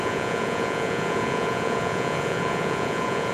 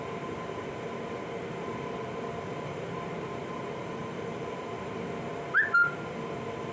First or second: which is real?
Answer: second